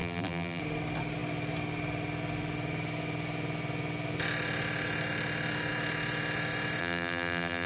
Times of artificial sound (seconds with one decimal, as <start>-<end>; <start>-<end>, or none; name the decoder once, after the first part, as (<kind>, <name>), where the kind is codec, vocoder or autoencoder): 0.0-0.6 (vocoder, BigVGAN v2); 6.8-7.7